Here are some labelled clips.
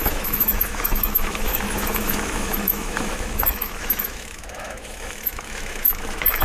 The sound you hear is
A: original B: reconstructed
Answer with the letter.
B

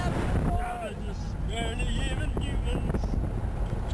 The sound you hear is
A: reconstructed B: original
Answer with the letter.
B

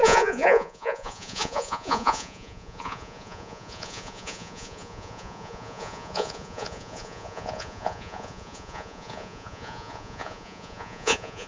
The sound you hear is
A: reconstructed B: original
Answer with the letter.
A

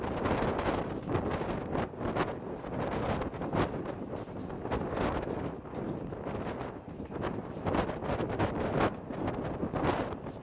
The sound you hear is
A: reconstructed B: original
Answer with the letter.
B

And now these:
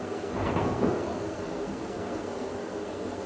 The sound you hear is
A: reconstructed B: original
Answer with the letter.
A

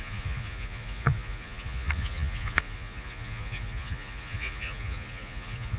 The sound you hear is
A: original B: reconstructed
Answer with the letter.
B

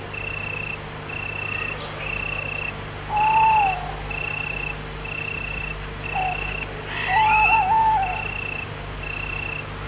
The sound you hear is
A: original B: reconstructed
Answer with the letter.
A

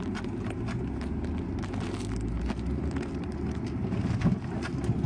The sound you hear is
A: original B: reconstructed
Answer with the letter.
A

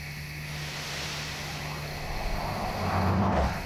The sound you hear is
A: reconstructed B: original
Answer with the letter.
B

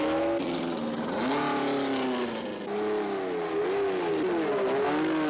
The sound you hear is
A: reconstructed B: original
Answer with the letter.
B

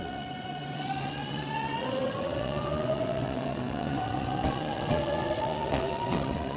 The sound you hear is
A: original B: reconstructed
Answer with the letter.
B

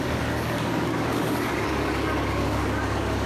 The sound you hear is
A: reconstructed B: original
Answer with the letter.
A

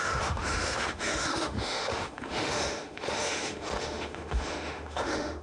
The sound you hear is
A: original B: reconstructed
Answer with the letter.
B